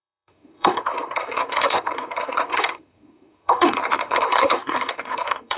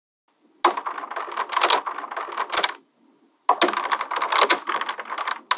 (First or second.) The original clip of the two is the second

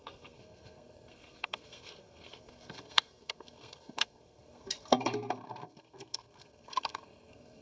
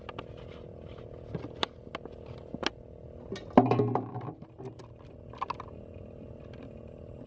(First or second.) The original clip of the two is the second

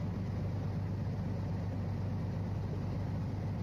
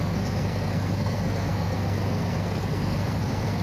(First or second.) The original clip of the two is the first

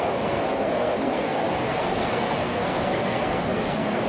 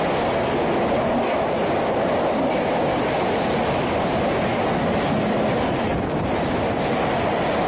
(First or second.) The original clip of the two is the second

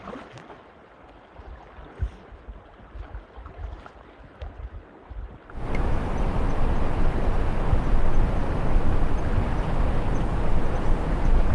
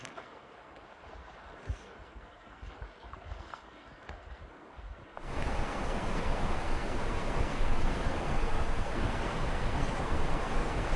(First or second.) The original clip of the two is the first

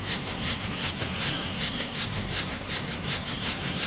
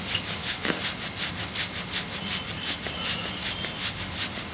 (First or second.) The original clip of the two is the second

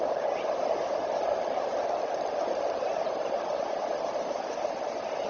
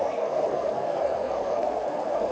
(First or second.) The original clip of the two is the first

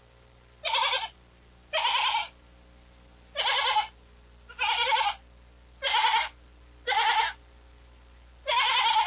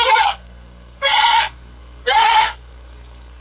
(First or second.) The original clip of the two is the first